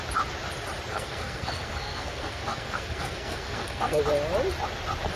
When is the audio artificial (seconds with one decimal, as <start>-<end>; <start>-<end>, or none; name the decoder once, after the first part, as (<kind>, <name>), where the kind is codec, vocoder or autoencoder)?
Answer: 0.9-4.0 (codec, SNAC)